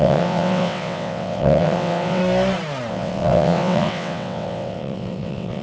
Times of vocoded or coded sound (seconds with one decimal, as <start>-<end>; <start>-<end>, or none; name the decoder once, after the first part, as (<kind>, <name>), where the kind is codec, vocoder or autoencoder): 0.0-2.2 (vocoder, WaveNeXt); 2.9-5.6